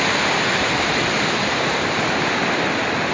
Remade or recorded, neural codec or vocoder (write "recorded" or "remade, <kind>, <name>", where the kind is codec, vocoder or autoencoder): recorded